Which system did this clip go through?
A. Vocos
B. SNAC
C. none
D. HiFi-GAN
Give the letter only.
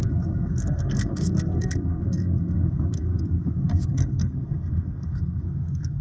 B